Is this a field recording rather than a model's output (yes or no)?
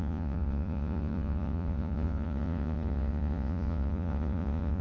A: no